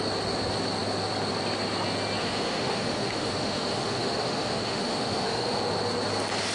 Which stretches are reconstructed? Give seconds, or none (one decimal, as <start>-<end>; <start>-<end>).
2.2-5.6